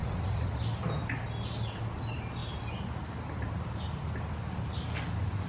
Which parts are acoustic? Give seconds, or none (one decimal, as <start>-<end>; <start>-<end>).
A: 0.5-5.5